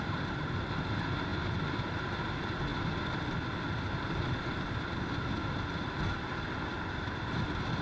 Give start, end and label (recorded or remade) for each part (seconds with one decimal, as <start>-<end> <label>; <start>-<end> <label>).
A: 0.0-7.8 recorded